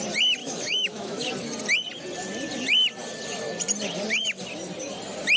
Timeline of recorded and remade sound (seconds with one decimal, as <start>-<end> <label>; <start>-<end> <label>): 0.0-0.4 recorded; 0.4-1.3 remade; 1.3-5.4 recorded